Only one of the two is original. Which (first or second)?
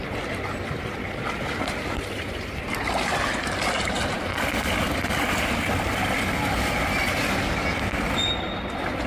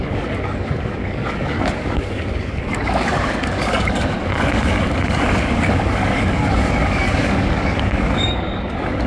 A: first